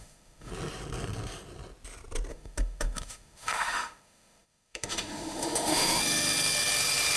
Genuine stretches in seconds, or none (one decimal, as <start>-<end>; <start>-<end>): 0.5-2.3; 6.0-7.2